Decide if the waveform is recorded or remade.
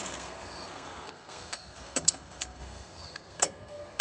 remade